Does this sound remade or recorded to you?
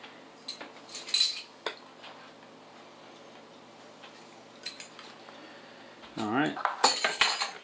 recorded